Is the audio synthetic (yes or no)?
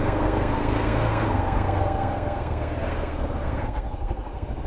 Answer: yes